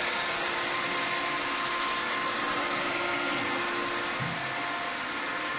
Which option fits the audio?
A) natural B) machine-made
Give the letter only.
A